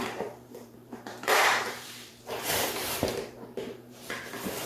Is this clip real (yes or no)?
no